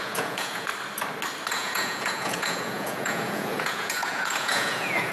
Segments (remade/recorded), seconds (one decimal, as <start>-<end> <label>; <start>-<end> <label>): 0.0-0.7 remade; 0.7-1.5 recorded; 1.5-5.1 remade

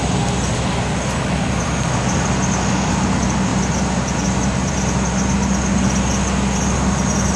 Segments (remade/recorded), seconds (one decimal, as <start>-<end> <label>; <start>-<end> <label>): 0.0-7.4 recorded

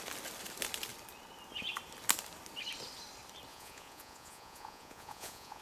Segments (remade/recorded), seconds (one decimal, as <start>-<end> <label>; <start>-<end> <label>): 0.0-3.5 recorded; 3.5-5.6 remade

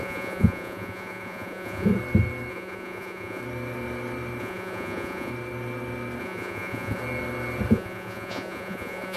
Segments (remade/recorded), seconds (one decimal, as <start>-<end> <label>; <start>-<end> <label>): 0.0-1.9 remade; 1.9-2.5 recorded; 2.5-3.4 remade; 3.4-4.4 recorded; 4.4-5.3 remade; 5.3-6.2 recorded; 6.2-7.0 remade; 7.0-7.7 recorded; 7.7-9.2 remade

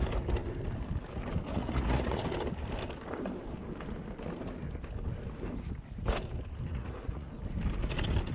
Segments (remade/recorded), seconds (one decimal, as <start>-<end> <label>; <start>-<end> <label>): 0.0-1.5 recorded; 1.5-2.2 remade; 2.2-6.7 recorded; 6.7-7.3 remade; 7.3-8.3 recorded

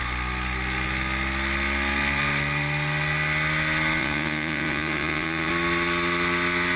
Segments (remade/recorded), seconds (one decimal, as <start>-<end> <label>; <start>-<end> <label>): 0.0-4.0 recorded; 4.0-5.5 remade; 5.5-6.8 recorded

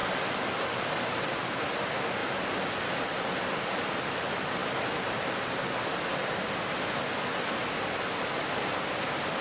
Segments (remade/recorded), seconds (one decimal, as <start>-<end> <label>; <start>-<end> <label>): 0.0-9.4 recorded

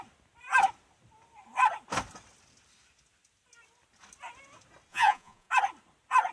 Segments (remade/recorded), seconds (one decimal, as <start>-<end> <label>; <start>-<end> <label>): 0.0-4.9 recorded; 4.9-5.5 remade; 5.5-6.3 recorded